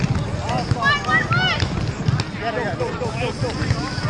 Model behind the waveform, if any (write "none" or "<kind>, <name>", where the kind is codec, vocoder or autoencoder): none